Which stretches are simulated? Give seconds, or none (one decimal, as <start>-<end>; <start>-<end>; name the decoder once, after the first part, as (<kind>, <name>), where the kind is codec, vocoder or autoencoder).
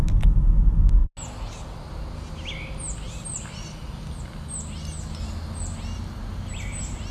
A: none